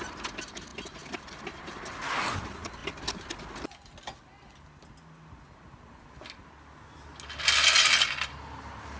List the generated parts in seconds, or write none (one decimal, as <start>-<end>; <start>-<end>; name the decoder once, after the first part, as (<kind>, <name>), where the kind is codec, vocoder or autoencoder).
none